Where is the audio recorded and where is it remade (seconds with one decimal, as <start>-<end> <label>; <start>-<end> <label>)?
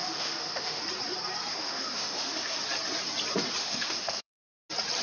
0.0-0.8 remade; 0.8-1.5 recorded; 1.5-2.6 remade; 2.6-3.6 recorded; 3.6-4.4 remade; 4.4-5.0 recorded